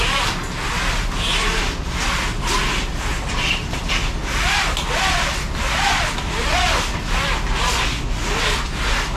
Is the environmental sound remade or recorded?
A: recorded